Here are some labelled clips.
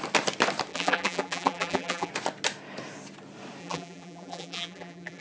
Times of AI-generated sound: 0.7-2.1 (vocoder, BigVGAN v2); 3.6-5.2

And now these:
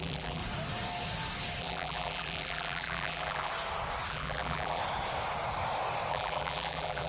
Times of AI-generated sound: 0.0-0.4 (vocoder, BigVGAN v2); 1.6-3.5; 4.1-4.8; 6.1-7.1